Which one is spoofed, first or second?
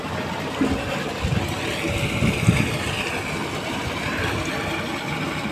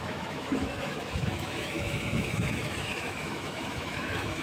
second